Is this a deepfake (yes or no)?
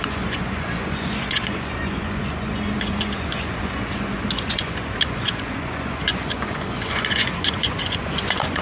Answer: yes